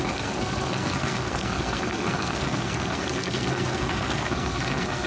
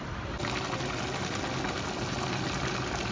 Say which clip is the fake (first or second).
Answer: first